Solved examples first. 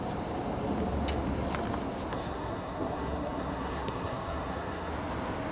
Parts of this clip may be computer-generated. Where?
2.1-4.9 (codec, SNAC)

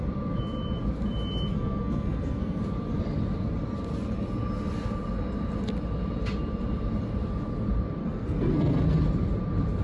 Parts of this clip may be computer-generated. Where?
1.5-2.6 (codec, SNAC); 8.0-9.0

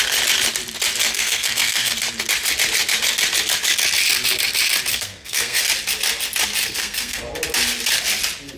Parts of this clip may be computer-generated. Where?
1.1-1.9 (codec, SNAC); 4.9-5.6; 6.6-7.2

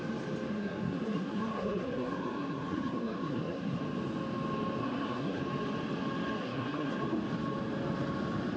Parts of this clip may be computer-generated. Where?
0.5-3.8 (codec, SNAC); 4.8-5.4; 6.4-7.0

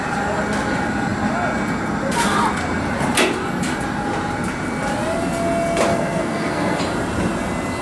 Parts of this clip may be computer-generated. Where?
5.9-6.8 (codec, SNAC)

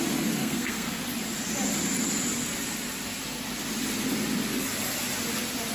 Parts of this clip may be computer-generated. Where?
0.4-1.0 (codec, SNAC)